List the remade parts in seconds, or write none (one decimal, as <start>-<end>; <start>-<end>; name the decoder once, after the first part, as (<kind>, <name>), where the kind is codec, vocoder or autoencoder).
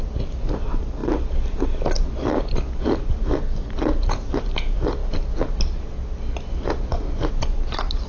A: none